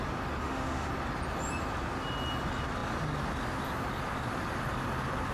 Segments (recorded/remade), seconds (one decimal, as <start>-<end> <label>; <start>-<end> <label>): 0.0-0.4 recorded; 0.4-0.9 remade; 0.9-5.3 recorded